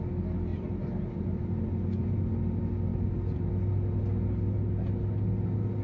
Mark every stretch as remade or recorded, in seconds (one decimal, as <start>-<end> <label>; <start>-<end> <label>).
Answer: 0.0-0.5 recorded; 0.5-2.3 remade; 2.3-2.9 recorded; 2.9-3.5 remade; 3.5-5.8 recorded